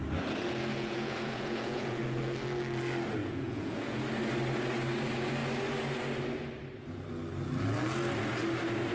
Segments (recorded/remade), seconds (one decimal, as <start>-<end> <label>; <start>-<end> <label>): 0.0-0.7 recorded; 0.7-2.2 remade; 2.2-3.2 recorded; 3.2-4.0 remade; 4.0-8.9 recorded